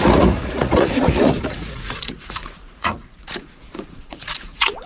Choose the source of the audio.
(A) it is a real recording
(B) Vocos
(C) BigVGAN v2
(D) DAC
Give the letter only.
B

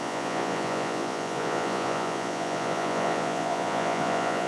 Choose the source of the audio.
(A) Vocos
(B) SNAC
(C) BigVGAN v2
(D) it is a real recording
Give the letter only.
A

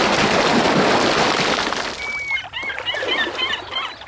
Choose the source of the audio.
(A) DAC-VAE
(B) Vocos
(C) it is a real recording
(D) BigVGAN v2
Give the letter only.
C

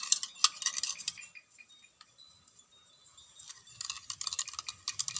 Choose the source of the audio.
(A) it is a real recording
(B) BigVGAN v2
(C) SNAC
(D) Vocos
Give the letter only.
A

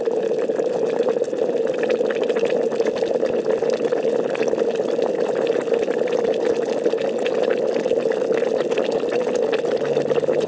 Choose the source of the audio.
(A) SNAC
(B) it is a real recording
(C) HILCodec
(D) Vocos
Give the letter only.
B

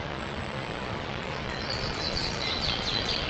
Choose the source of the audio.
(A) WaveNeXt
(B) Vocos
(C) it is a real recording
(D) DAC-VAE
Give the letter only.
B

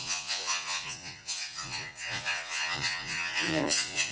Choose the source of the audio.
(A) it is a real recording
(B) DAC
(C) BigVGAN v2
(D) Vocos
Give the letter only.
D